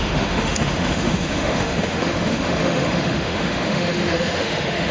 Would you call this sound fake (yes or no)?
yes